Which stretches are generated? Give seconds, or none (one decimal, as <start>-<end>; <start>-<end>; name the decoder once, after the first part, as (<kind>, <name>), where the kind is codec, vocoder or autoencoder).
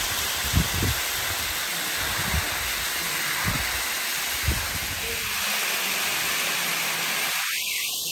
0.0-1.7 (vocoder, BigVGAN v2); 6.6-8.1